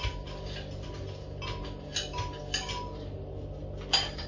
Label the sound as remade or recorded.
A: recorded